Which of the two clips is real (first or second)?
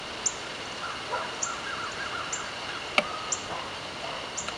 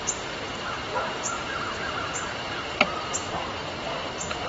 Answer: first